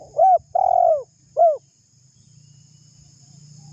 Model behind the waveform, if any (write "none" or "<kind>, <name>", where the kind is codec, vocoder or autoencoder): none